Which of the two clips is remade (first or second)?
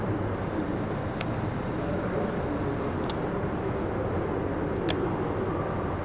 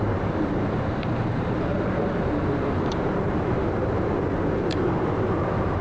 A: second